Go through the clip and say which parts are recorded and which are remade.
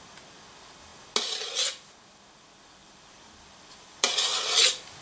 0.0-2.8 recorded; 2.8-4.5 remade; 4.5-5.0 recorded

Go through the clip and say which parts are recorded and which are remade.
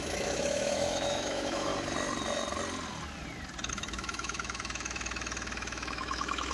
0.0-1.7 remade; 1.7-3.7 recorded; 3.7-6.5 remade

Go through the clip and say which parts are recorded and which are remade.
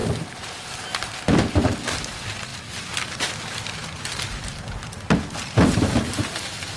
0.0-6.8 recorded